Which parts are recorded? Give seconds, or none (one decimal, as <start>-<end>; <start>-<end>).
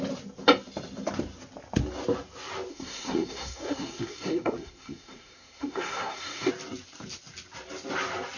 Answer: 0.0-2.7; 6.5-8.4